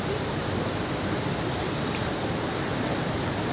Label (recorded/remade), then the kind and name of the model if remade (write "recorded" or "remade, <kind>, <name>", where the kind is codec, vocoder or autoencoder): recorded